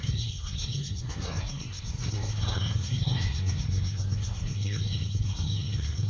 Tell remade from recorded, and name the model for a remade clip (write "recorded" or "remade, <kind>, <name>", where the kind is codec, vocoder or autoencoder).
remade, codec, SNAC